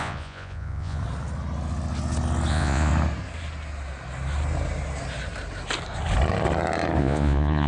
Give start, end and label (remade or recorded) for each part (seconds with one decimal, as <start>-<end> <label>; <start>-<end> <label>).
0.0-1.0 remade; 1.0-2.5 recorded; 2.5-2.9 remade; 2.9-7.0 recorded; 7.0-7.7 remade